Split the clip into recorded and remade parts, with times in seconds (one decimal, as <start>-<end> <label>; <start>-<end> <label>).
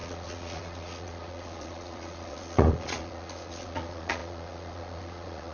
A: 0.0-5.5 remade